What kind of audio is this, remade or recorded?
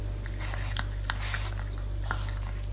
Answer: recorded